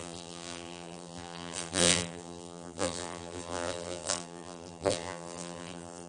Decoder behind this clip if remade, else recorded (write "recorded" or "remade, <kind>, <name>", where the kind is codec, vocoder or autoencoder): remade, vocoder, BigVGAN v2